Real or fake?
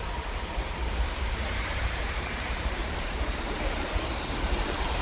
fake